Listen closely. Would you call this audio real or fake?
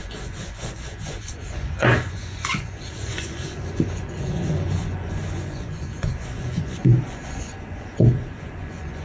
fake